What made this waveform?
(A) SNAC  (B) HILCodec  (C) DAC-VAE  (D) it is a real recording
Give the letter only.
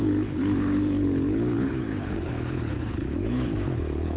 B